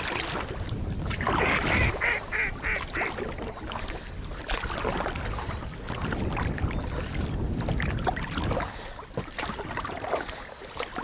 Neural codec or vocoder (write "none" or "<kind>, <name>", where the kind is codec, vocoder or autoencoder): none